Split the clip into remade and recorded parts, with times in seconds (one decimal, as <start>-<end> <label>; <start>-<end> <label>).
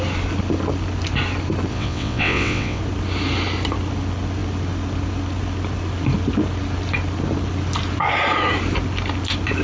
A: 0.0-1.7 recorded; 1.7-2.8 remade; 2.8-9.6 recorded